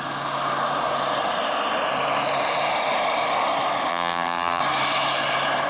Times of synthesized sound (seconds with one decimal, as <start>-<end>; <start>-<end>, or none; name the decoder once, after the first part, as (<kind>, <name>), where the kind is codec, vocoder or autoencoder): 3.9-4.6 (vocoder, BigVGAN v2)